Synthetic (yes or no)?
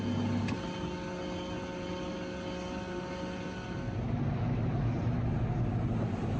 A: no